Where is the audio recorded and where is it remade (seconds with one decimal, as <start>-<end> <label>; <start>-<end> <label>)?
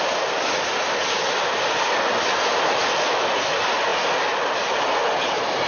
0.0-5.7 recorded